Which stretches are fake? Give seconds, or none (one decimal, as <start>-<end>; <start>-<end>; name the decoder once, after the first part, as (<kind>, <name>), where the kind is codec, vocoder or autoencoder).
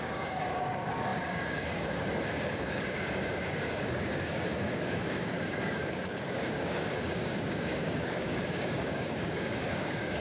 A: 0.0-10.2 (codec, DAC)